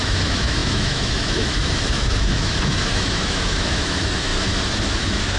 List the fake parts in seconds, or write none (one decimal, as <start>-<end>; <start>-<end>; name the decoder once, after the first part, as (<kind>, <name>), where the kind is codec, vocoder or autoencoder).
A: 0.0-5.4 (autoencoder, DAC-VAE)